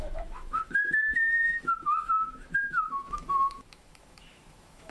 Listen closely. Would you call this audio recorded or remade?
remade